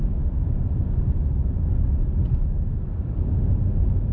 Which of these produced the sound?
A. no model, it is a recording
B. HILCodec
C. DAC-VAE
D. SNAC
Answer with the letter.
A